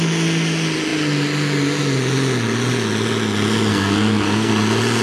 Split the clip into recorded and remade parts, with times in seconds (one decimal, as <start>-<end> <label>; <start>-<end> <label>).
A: 0.0-3.7 recorded; 3.7-4.5 remade; 4.5-5.0 recorded